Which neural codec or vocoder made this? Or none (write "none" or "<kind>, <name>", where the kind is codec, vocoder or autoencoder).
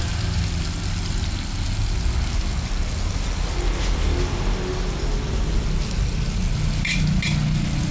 none